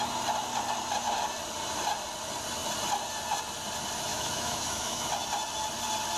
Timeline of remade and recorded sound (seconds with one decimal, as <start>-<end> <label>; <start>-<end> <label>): 0.0-4.1 recorded; 4.1-5.1 remade; 5.1-6.2 recorded

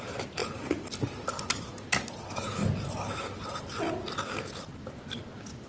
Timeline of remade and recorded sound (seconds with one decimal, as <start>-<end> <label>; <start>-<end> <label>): 0.0-5.7 recorded

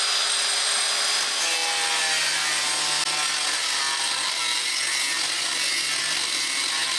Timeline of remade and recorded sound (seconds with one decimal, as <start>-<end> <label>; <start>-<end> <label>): 0.0-7.0 recorded

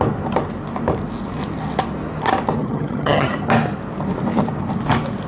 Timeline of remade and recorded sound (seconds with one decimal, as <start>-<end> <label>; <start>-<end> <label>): 0.0-2.6 recorded; 2.6-3.3 remade; 3.3-5.3 recorded